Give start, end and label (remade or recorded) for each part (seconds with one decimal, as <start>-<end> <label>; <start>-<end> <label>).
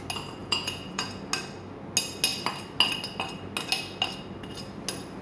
0.0-0.4 recorded; 0.4-1.1 remade; 1.1-5.2 recorded